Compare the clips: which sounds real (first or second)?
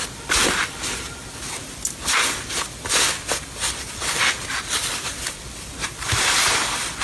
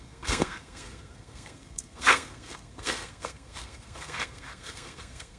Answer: first